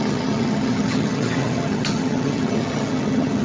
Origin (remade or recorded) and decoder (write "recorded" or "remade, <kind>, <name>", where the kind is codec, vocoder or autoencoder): remade, vocoder, HiFi-GAN